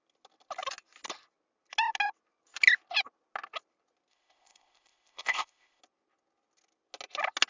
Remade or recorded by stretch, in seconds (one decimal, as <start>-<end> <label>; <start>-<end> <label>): 0.0-4.1 recorded; 4.1-5.8 remade; 5.8-7.5 recorded